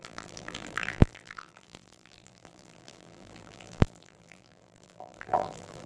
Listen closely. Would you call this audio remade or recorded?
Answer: remade